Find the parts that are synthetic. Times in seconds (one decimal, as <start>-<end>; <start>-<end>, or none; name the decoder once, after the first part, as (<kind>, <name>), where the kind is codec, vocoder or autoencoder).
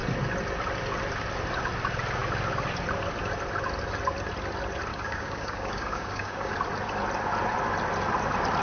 4.9-6.5 (codec, DAC)